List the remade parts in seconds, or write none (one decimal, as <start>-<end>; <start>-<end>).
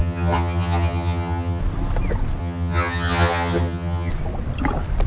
0.0-1.6; 2.4-4.1